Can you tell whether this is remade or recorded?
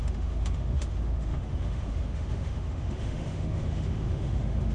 remade